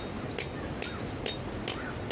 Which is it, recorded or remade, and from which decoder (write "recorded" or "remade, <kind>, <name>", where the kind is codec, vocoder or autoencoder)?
recorded